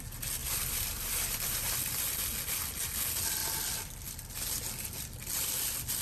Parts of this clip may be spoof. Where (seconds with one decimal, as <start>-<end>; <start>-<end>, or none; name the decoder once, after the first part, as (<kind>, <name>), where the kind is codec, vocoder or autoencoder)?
0.4-2.0 (vocoder, BigVGAN v2)